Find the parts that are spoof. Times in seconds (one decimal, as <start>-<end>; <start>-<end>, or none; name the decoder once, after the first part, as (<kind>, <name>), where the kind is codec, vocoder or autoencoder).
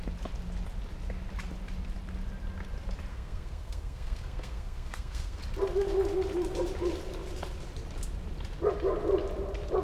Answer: 3.1-5.4 (codec, SNAC)